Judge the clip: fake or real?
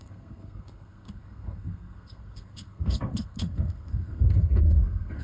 fake